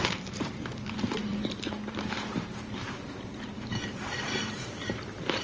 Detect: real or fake fake